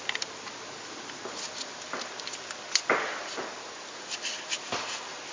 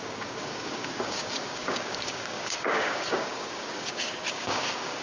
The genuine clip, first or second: first